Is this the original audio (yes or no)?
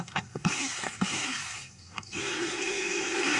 no